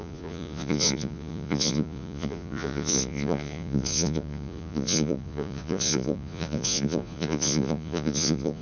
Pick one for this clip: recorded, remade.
remade